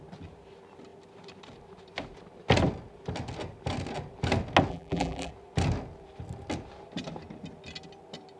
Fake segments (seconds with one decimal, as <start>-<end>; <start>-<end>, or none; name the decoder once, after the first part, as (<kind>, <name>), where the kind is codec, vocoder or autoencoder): 4.7-5.3 (vocoder, BigVGAN v2)